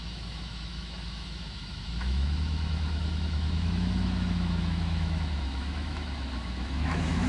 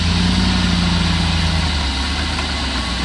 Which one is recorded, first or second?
second